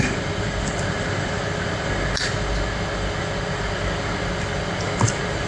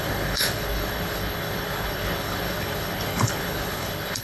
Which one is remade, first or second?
second